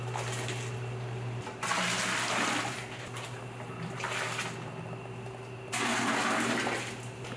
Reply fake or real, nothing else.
real